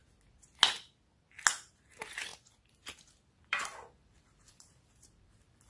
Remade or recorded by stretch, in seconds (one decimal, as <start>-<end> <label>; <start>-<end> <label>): 0.0-1.7 recorded; 1.7-2.3 remade; 2.3-3.3 recorded; 3.3-5.7 remade